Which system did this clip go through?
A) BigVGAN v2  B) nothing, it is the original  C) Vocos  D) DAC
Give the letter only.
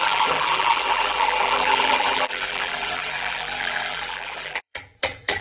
A